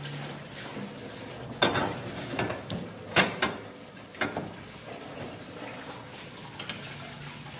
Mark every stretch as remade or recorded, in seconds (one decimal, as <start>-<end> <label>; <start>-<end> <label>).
0.0-7.6 recorded